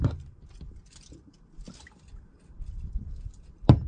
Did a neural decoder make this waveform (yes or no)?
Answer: yes